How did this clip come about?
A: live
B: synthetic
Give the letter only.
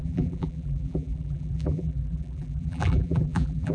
B